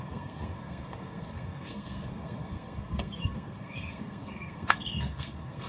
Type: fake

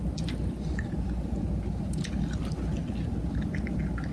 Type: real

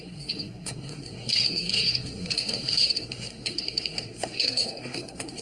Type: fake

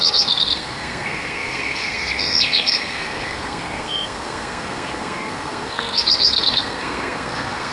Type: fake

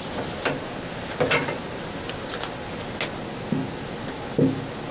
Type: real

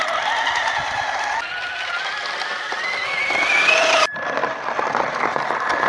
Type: real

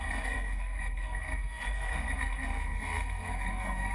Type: fake